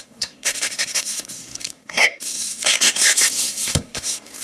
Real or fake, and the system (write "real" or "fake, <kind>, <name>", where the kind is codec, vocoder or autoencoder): fake, codec, SNAC